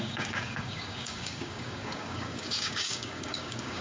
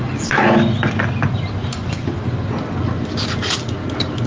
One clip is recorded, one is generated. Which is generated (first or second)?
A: first